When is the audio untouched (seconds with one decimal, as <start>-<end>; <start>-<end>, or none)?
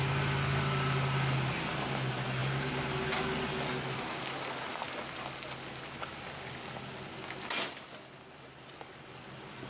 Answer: 0.0-9.7